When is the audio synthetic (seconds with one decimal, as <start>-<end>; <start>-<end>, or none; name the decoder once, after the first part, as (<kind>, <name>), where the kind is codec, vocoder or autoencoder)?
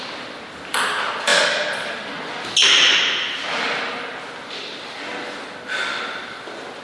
none